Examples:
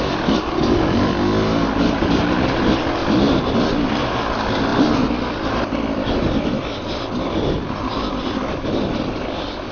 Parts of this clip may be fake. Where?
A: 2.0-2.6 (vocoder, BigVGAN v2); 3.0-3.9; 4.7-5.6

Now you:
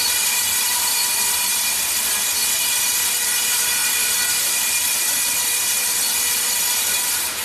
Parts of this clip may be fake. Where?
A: 0.0-3.8 (vocoder, BigVGAN v2); 4.3-7.4